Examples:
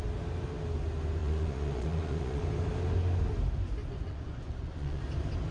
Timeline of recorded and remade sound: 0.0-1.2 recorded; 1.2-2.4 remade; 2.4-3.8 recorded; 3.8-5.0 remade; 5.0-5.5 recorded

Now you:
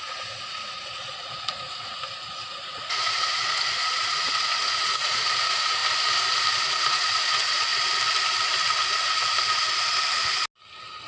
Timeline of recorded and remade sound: 0.0-5.8 remade; 5.8-6.6 recorded; 6.6-7.7 remade; 7.7-11.1 recorded

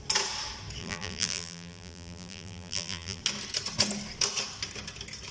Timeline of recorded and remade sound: 0.0-0.8 recorded; 0.8-3.2 remade; 3.2-5.3 recorded

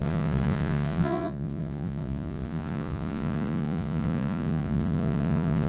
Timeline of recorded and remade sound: 0.0-5.7 remade

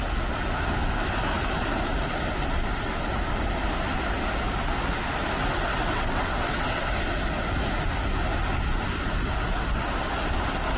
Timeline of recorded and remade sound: 0.0-5.7 recorded; 5.7-6.8 remade; 6.8-10.8 recorded

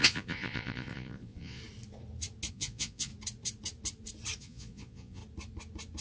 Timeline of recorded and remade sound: 0.0-1.6 remade; 1.6-2.5 recorded; 2.5-3.1 remade; 3.1-4.4 recorded; 4.4-5.2 remade; 5.2-6.0 recorded

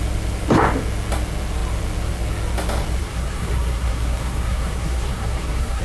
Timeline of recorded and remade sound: 0.0-3.0 recorded; 3.0-5.8 remade